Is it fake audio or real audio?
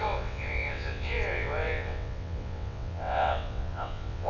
fake